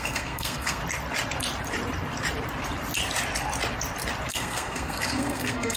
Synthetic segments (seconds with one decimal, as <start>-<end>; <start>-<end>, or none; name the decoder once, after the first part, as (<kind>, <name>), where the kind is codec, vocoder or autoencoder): 0.0-0.8 (codec, SNAC); 4.3-5.8